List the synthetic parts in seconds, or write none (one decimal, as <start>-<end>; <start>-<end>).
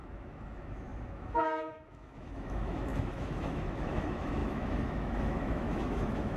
0.0-6.4